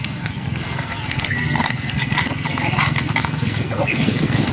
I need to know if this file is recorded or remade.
remade